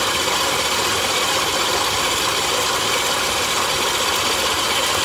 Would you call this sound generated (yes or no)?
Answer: no